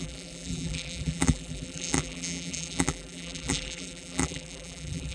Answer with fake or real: fake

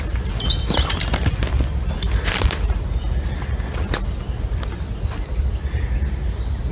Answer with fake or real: real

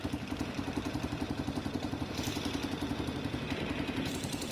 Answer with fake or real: fake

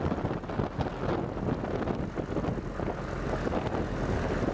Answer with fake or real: real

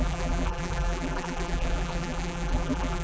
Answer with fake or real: fake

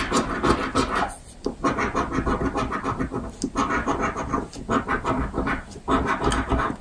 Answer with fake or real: real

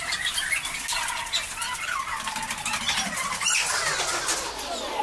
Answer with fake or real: real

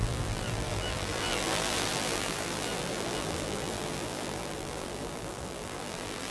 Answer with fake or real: fake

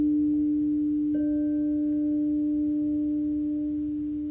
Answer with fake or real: real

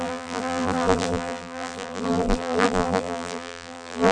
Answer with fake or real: fake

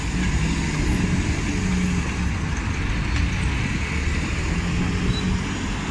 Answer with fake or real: real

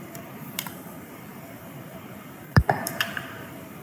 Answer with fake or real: fake